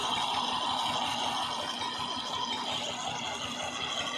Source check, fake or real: real